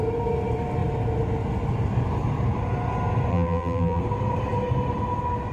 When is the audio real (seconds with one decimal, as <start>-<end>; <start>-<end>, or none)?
0.0-3.3; 4.0-5.5